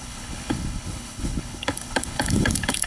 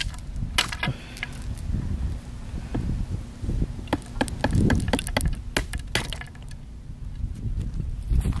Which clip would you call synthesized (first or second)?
first